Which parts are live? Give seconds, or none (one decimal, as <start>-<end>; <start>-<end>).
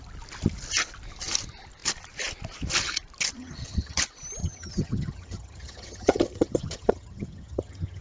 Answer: 0.0-3.4; 4.0-4.4